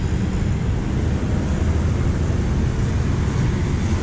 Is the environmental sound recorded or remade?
recorded